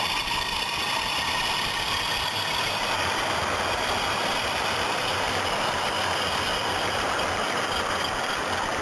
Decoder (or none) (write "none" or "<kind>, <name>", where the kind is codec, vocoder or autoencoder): none